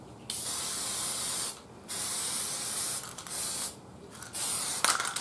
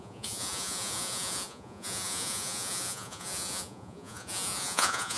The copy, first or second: second